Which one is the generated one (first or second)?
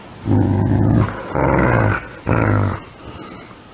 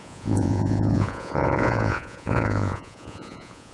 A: second